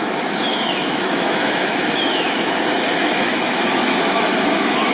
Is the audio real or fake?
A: fake